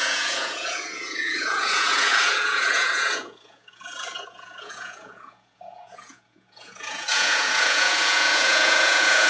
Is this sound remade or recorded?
remade